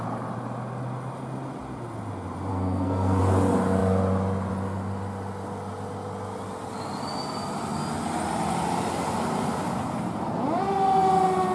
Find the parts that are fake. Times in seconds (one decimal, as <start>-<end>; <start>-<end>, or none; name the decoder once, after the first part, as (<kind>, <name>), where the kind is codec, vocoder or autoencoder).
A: 2.5-3.2 (codec, SNAC)